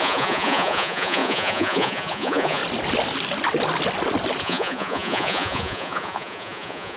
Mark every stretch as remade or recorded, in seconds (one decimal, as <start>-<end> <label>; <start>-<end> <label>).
0.0-2.6 remade; 2.6-4.4 recorded; 4.4-7.0 remade